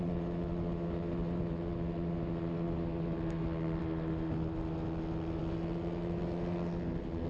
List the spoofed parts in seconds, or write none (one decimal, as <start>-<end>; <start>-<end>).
none